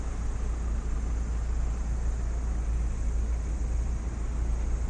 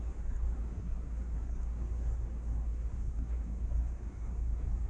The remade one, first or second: second